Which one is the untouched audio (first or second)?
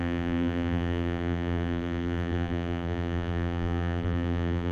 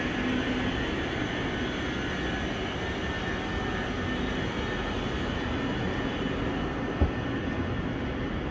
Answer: second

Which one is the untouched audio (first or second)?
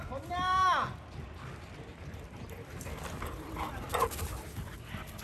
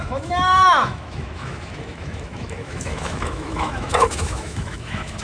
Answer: first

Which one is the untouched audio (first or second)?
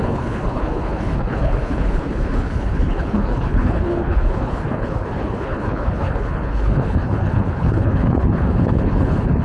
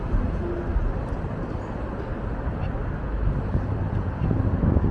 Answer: second